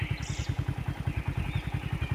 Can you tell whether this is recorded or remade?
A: recorded